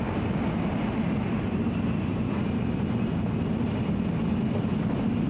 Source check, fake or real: real